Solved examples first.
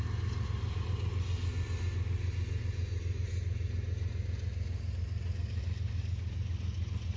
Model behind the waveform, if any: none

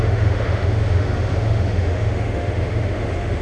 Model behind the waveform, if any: autoencoder, DAC-VAE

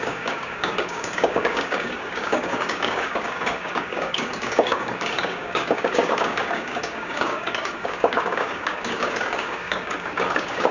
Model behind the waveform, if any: codec, DAC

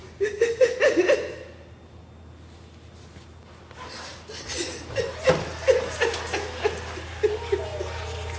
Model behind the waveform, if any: none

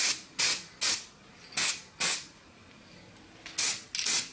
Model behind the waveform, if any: none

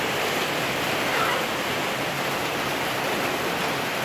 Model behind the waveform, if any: none